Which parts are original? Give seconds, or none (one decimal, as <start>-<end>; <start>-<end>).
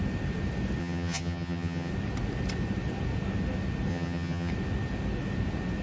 0.0-0.8; 1.9-3.9; 4.5-5.8